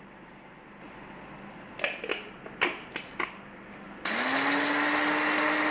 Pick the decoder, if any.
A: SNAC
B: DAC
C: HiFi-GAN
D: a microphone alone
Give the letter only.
D